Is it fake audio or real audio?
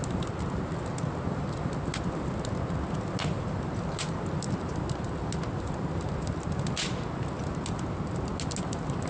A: real